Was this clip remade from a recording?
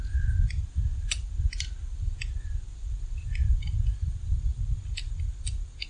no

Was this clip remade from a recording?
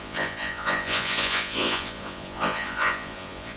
yes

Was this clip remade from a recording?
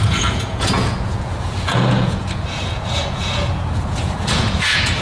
yes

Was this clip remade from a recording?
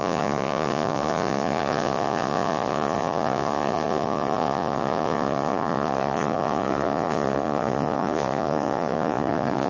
yes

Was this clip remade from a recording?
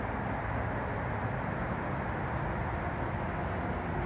no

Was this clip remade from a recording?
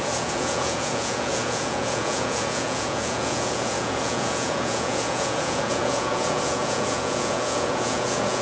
yes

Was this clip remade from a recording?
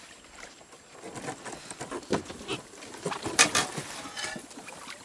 no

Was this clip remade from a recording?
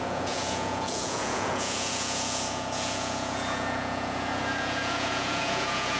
yes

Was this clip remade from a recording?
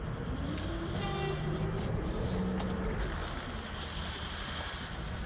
no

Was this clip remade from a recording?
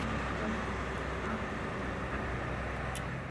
no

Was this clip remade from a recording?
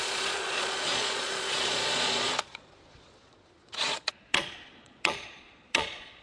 yes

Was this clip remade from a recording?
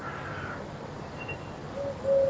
no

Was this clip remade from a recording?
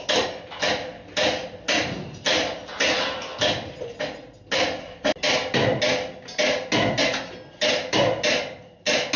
no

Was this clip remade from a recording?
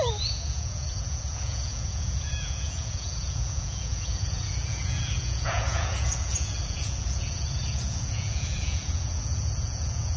yes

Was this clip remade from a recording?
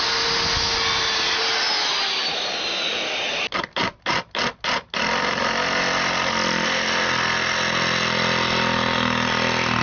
no